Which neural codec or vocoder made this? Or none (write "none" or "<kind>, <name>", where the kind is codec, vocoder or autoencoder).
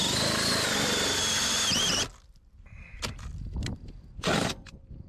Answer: none